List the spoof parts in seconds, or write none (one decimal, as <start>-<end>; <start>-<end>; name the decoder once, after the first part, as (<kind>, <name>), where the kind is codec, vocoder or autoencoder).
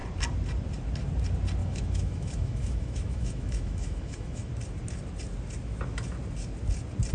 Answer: 1.6-4.5 (autoencoder, DAC-VAE)